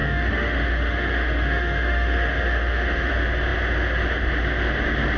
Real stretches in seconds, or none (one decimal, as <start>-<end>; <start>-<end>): 3.1-5.2